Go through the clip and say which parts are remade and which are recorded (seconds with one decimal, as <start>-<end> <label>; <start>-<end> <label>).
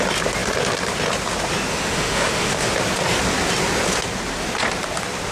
0.0-1.7 recorded; 1.7-2.8 remade; 2.8-5.3 recorded